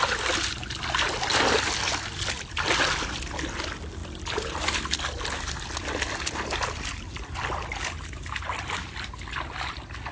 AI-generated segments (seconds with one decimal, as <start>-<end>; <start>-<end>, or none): none